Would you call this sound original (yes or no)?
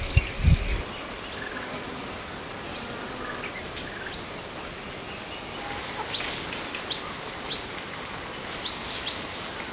yes